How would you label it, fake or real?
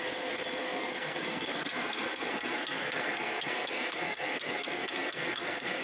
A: fake